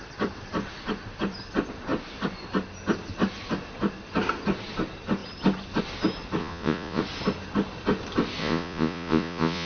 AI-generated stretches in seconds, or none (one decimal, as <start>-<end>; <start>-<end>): 6.4-7.0; 8.4-9.7